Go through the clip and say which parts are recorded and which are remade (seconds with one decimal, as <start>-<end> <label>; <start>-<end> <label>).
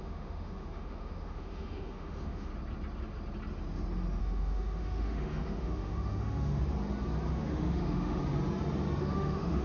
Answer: 0.0-2.5 remade; 2.5-4.2 recorded; 4.2-6.6 remade; 6.6-7.3 recorded; 7.3-8.2 remade; 8.2-9.0 recorded; 9.0-9.6 remade